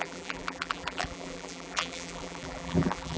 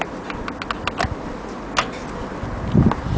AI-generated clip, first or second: first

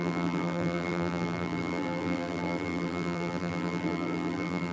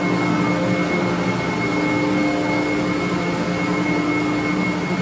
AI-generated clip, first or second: first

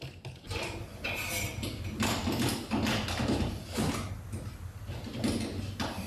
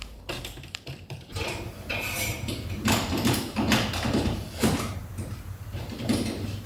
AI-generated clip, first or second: second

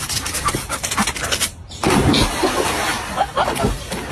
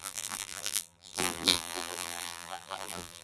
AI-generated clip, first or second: second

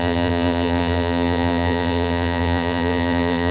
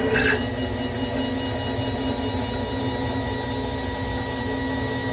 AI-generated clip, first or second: first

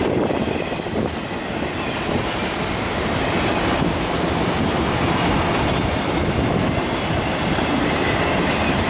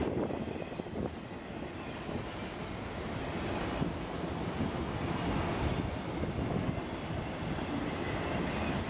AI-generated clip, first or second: first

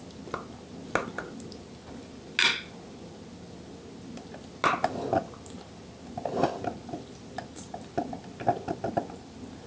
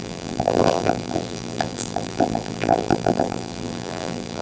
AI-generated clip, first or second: second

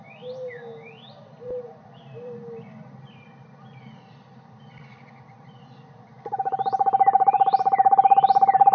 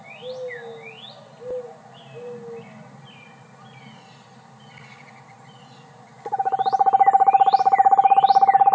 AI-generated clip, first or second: first